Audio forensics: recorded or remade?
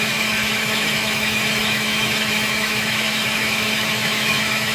remade